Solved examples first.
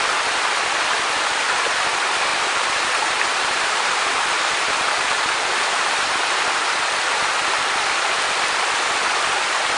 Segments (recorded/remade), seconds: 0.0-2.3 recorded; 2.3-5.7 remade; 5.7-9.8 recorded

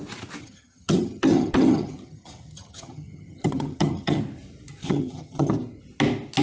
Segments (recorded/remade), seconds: 0.0-0.4 recorded; 0.4-4.2 remade; 4.2-4.8 recorded; 4.8-5.5 remade; 5.5-6.4 recorded

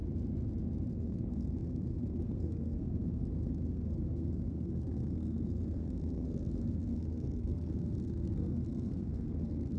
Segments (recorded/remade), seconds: 0.0-0.9 recorded; 0.9-9.8 remade

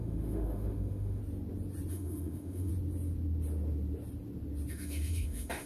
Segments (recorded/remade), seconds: 0.0-1.2 remade; 1.2-1.9 recorded; 1.9-2.7 remade; 2.7-4.7 recorded; 4.7-5.7 remade

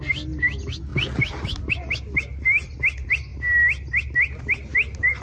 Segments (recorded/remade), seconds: 0.0-5.2 recorded

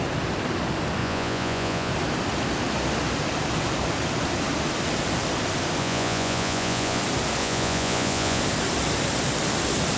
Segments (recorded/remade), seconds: 0.0-1.0 recorded; 1.0-1.9 remade; 1.9-5.8 recorded; 5.8-7.0 remade; 7.0-7.4 recorded; 7.4-8.4 remade; 8.4-10.0 recorded

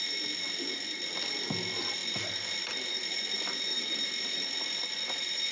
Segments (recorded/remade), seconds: 0.0-2.0 recorded; 2.0-5.5 remade

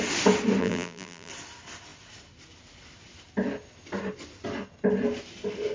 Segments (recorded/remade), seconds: 0.0-0.6 recorded; 0.6-1.3 remade; 1.3-5.7 recorded